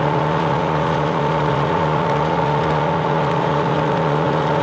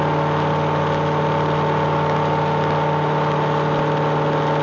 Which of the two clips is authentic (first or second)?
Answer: second